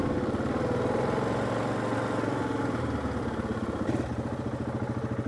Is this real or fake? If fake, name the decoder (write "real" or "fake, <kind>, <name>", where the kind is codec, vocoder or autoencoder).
real